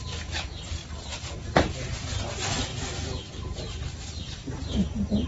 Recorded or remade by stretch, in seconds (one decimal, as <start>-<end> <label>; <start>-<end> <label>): 0.0-5.3 recorded